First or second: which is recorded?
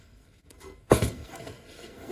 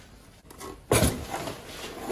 second